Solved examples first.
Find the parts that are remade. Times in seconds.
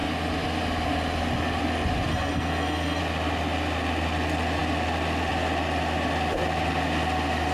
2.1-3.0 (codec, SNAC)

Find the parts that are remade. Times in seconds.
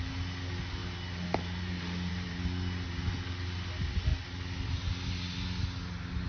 none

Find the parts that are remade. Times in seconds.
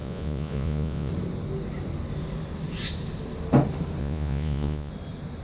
0.0-1.1 (vocoder, Vocos); 4.0-4.9